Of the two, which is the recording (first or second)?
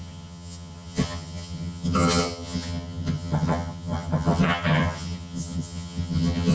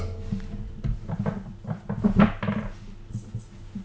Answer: second